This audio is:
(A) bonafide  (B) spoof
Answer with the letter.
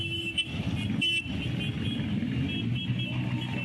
A